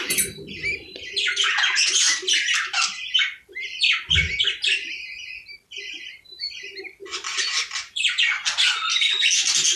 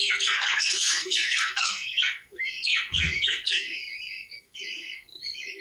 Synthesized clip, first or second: second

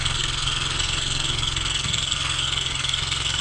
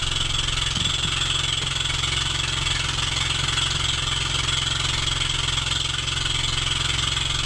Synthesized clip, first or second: first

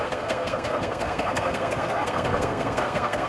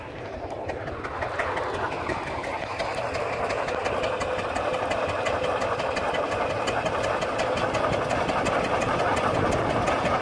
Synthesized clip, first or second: first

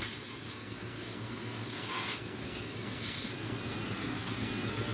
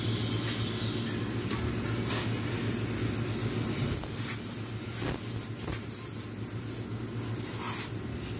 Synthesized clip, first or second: first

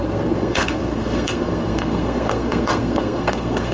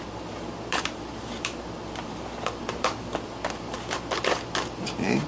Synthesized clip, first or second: first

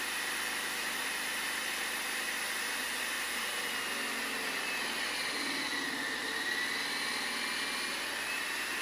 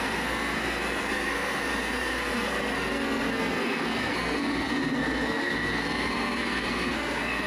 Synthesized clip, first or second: second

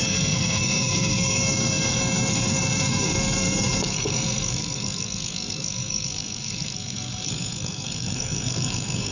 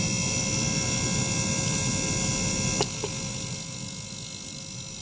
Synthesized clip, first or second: first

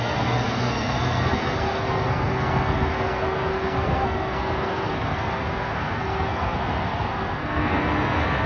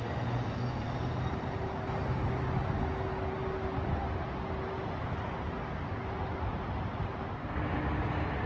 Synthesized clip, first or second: first